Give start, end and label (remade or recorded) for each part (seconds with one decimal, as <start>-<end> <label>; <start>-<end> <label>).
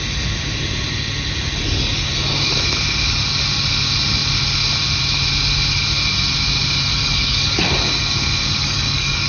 0.0-6.9 recorded; 6.9-7.6 remade; 7.6-8.6 recorded; 8.6-9.3 remade